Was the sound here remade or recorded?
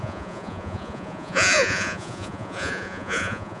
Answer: remade